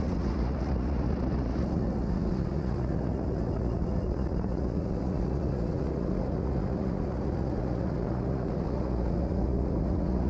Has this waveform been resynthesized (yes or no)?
yes